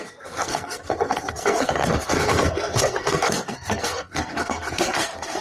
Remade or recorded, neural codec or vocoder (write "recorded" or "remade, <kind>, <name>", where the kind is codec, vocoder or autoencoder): remade, codec, SNAC